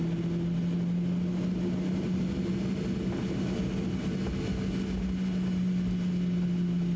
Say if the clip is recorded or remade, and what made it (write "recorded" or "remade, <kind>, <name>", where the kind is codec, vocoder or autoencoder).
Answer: recorded